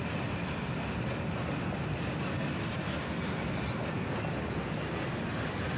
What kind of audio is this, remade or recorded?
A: recorded